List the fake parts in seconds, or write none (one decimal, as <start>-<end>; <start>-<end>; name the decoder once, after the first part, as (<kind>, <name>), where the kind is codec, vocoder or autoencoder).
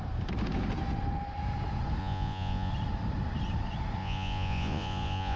2.0-2.7 (vocoder, Vocos); 4.0-5.4